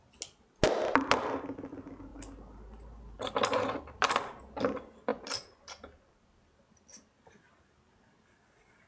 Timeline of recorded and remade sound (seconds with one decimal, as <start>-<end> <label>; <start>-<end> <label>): 0.0-2.1 recorded; 2.1-4.4 remade; 4.4-8.9 recorded